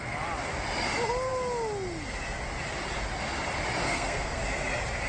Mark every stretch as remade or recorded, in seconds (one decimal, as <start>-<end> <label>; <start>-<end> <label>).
0.0-3.8 recorded; 3.8-4.4 remade; 4.4-5.1 recorded